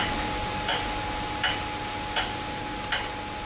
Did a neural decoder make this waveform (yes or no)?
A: no